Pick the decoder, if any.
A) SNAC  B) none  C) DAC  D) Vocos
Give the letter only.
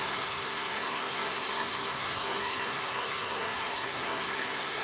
A